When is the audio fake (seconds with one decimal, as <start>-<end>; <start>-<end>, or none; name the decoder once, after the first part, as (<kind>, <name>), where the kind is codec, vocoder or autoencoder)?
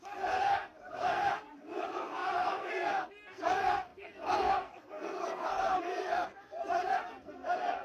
0.0-7.8 (codec, SNAC)